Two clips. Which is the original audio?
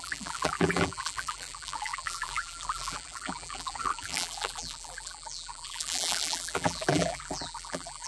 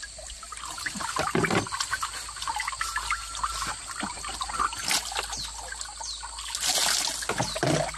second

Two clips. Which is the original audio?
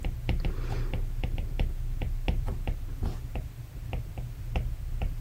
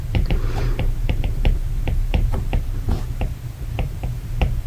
first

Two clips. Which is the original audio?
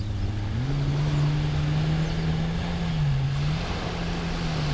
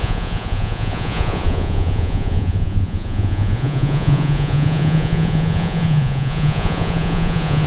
first